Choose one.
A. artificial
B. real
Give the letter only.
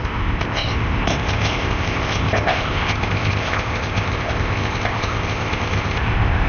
A